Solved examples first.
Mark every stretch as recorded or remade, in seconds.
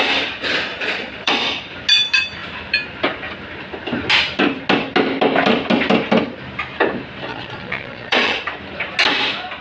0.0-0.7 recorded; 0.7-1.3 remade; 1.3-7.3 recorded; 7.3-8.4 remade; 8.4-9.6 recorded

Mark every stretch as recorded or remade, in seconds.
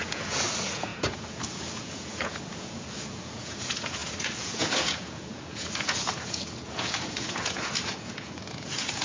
0.0-9.0 remade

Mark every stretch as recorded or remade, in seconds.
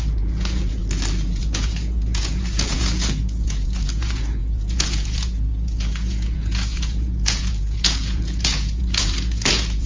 0.0-0.8 remade; 0.8-1.4 recorded; 1.4-9.9 remade